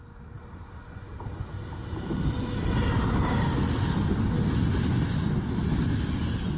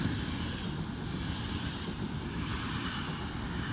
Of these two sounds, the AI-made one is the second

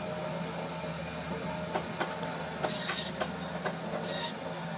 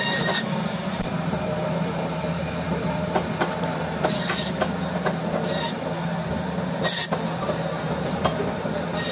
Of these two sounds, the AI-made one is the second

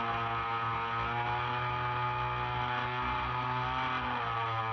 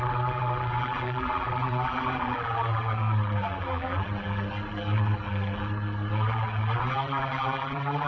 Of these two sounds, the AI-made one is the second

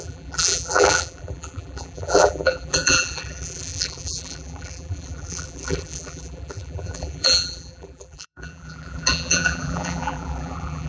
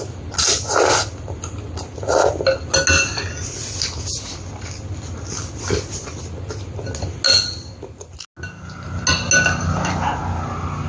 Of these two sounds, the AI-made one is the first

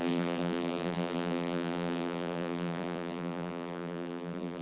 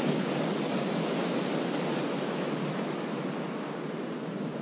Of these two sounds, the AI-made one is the first